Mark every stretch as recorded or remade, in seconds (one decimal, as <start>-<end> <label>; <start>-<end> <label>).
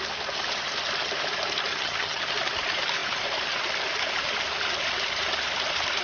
0.0-1.7 recorded; 1.7-2.2 remade; 2.2-6.0 recorded